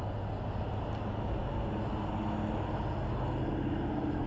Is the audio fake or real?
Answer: real